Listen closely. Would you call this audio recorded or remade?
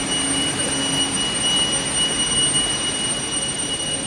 recorded